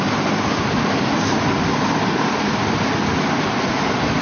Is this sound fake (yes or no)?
no